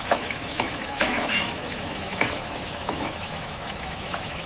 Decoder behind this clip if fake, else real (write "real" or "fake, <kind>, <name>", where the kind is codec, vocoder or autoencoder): fake, autoencoder, DAC-VAE